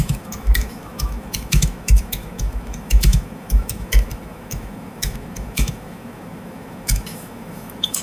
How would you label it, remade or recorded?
remade